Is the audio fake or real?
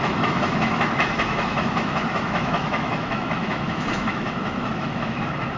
fake